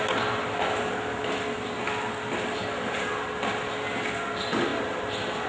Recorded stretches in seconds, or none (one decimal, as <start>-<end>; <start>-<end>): 0.0-5.5

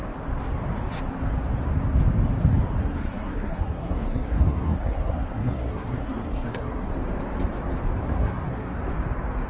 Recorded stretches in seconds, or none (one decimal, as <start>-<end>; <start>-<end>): 0.0-2.8; 6.9-8.0; 8.8-9.5

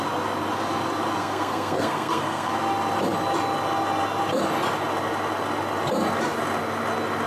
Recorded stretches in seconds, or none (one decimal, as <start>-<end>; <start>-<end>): 0.0-1.2; 2.5-7.3

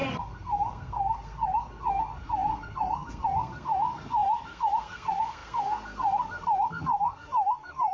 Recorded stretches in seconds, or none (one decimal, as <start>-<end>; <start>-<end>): none

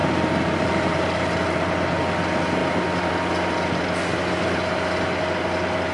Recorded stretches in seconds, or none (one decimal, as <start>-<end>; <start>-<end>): 0.0-5.9

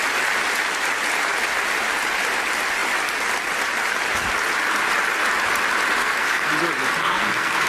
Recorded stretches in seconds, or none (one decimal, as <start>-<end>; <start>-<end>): 0.0-6.0; 6.5-7.0